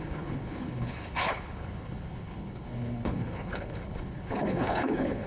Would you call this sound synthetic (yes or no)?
yes